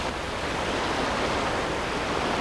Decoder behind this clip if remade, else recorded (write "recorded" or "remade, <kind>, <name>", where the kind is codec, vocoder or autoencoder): recorded